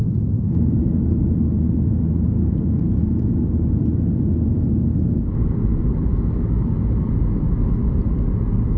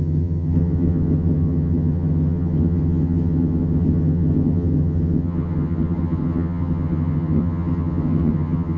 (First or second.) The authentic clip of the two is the first